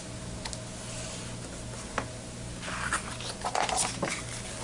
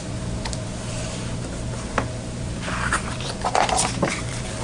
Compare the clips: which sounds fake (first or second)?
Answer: second